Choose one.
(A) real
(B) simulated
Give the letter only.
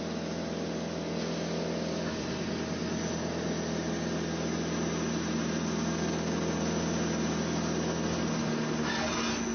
A